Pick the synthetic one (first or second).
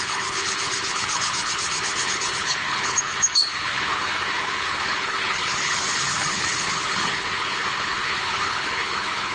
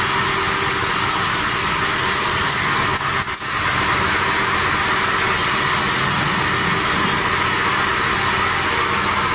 first